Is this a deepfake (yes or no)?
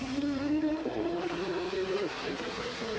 yes